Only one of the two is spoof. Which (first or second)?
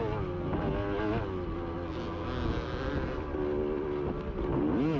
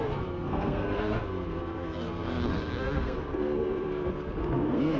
second